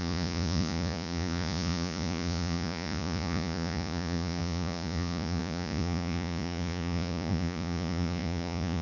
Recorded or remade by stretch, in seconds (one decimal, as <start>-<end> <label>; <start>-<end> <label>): 0.0-8.8 remade